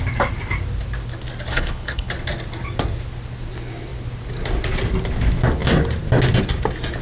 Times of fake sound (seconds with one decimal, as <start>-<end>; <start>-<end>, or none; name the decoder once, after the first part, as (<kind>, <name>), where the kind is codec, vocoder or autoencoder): 1.5-2.1 (codec, HILCodec)